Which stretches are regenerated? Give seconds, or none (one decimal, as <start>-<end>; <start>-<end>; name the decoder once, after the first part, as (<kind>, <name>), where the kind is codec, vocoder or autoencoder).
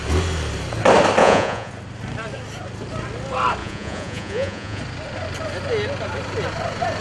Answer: 1.2-1.7 (vocoder, Vocos); 3.6-4.8